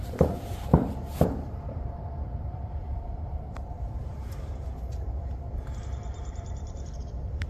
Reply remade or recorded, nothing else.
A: remade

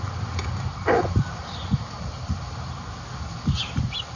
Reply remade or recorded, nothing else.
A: recorded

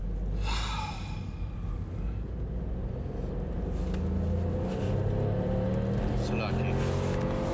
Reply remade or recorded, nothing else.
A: recorded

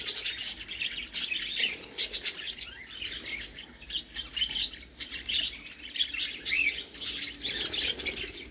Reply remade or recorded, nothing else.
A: recorded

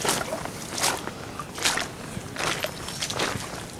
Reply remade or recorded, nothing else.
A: recorded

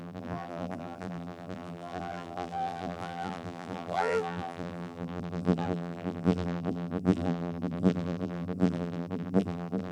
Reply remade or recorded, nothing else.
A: remade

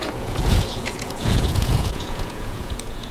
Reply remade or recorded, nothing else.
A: remade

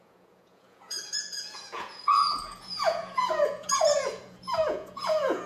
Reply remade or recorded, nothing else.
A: remade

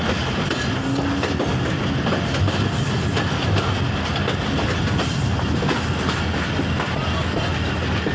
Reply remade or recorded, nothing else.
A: recorded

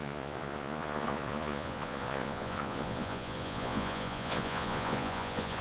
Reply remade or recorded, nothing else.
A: remade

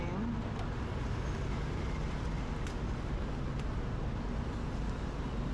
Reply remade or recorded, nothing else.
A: recorded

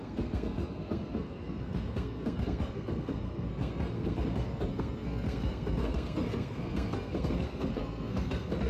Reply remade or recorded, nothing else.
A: remade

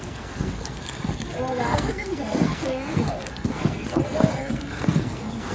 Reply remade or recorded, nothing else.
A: remade